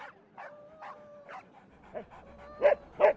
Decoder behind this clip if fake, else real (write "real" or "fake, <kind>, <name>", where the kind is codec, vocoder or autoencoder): real